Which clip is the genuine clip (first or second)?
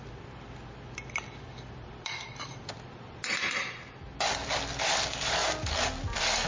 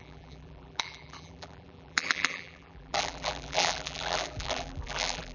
first